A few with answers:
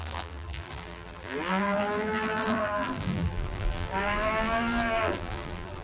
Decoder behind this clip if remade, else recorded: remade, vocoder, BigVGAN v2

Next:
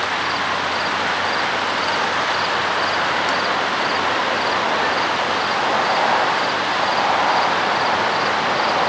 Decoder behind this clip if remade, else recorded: recorded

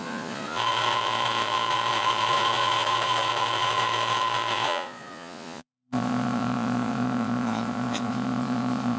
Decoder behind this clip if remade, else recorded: remade, vocoder, Vocos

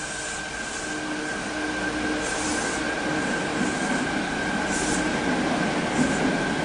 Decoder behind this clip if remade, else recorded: recorded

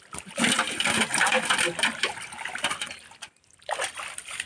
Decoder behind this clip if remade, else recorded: recorded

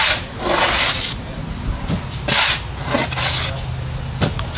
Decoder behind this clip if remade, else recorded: recorded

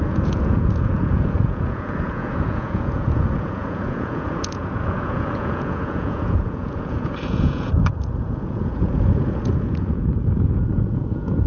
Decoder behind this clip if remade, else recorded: remade, vocoder, Vocos